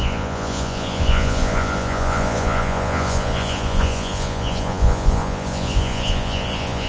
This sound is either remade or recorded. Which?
remade